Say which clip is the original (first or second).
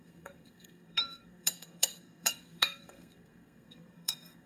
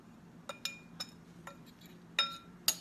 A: second